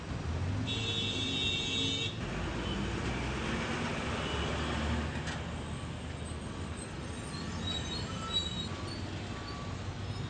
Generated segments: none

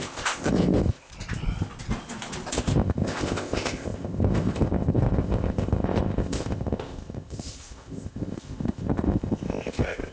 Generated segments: 0.0-1.1; 2.5-10.1

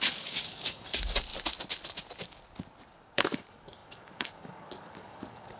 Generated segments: 0.0-1.3; 2.9-5.6